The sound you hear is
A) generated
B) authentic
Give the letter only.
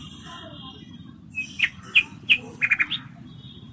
B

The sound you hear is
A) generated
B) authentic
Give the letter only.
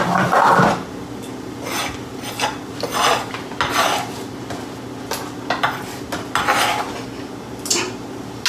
B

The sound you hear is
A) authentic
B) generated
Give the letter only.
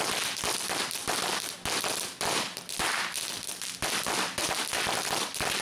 A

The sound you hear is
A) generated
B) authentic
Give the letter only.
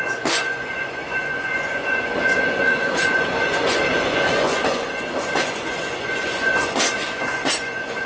A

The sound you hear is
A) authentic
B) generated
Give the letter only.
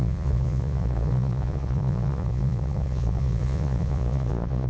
B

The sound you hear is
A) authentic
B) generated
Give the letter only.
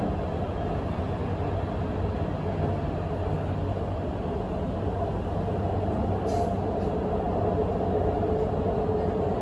A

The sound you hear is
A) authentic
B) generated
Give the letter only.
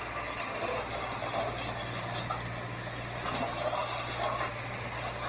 A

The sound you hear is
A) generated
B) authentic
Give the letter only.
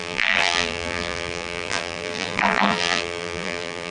A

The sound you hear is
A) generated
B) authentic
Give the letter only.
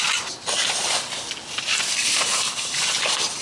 B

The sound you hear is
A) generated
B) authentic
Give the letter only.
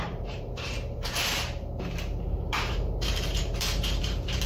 A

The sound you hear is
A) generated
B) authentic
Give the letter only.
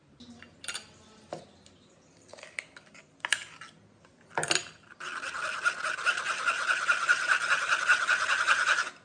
B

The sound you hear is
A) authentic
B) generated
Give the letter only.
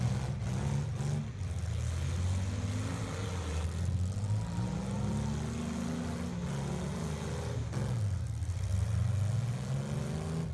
A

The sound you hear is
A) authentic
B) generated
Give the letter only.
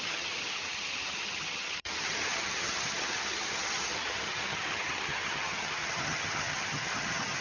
B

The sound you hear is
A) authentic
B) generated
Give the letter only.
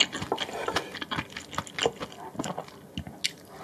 A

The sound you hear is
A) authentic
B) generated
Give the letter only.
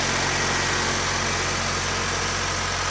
A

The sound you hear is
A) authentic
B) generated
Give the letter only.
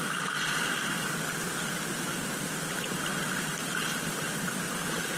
A